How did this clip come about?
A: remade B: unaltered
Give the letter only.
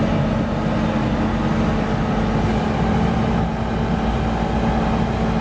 B